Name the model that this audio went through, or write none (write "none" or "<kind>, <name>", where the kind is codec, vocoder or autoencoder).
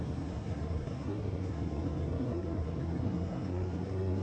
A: codec, SNAC